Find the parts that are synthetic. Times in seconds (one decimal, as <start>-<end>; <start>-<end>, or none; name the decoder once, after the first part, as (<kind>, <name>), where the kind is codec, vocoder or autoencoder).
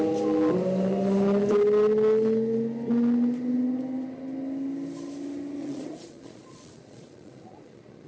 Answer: 5.6-8.1 (vocoder, Vocos)